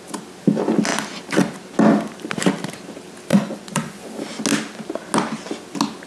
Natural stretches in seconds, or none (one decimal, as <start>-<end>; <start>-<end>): 0.0-3.3; 4.0-6.1